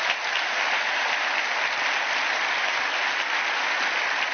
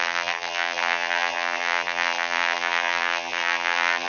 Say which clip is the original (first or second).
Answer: first